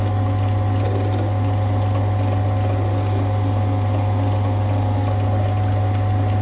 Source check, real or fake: real